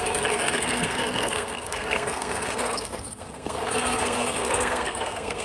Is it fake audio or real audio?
fake